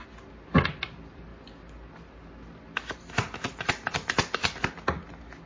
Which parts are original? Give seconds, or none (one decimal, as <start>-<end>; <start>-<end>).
0.0-5.5